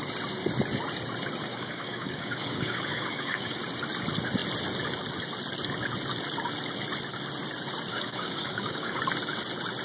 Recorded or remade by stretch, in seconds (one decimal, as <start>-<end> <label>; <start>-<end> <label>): 0.0-1.5 recorded; 1.5-3.6 remade; 3.6-7.9 recorded; 7.9-9.0 remade; 9.0-9.8 recorded